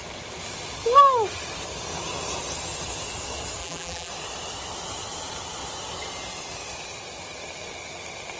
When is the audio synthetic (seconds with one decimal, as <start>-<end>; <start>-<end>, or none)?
3.6-4.1